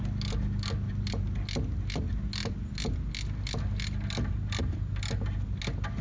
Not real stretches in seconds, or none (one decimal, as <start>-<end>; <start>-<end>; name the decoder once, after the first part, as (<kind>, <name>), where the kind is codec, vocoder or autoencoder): none